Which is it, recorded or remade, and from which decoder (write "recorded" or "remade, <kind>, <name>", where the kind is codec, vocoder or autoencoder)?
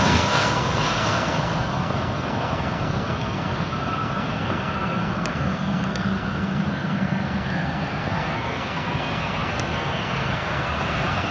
remade, codec, SNAC